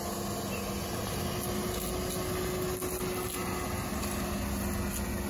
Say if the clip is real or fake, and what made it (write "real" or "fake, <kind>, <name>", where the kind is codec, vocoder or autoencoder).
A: real